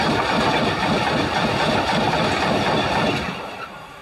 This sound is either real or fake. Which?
real